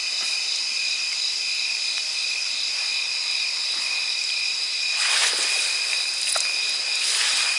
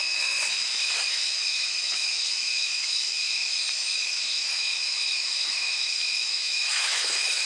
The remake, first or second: second